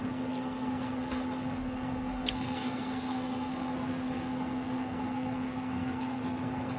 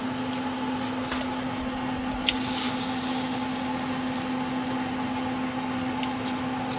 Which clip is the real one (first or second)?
second